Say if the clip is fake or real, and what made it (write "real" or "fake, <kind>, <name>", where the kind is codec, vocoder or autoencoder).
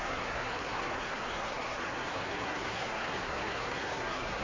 fake, codec, SNAC